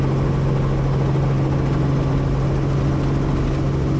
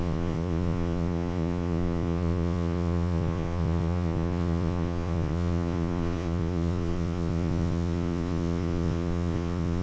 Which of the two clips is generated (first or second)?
second